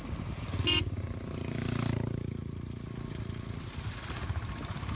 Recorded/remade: recorded